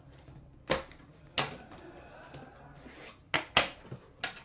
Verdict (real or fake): real